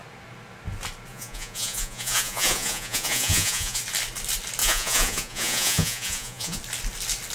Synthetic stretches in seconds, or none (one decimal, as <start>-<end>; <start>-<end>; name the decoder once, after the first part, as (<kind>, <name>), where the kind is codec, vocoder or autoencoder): 1.1-3.8 (vocoder, Vocos); 4.6-6.6